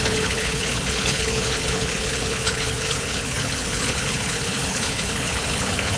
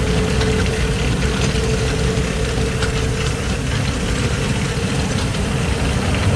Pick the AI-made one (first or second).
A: first